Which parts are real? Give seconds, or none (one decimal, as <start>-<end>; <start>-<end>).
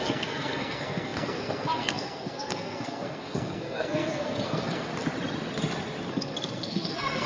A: 4.9-6.1